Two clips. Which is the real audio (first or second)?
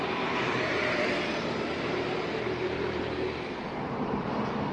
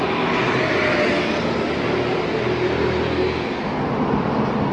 second